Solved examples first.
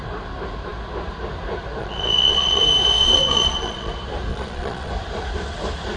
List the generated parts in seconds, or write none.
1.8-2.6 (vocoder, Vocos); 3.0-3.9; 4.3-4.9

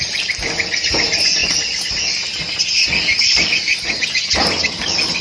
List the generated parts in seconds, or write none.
none

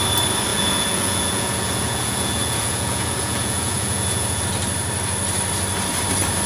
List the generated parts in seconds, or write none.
0.5-4.4 (vocoder, Vocos)

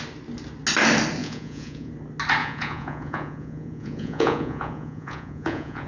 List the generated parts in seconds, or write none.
1.2-1.9 (vocoder, Vocos); 2.4-5.9